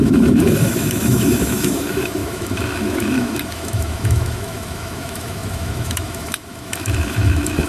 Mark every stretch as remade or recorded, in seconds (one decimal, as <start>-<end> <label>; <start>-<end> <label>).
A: 0.0-7.7 remade